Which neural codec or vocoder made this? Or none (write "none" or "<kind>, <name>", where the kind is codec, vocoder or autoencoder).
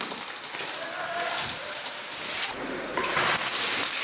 none